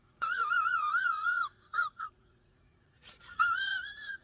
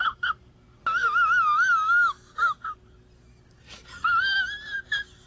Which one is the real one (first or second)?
second